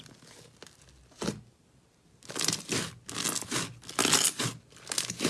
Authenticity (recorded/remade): recorded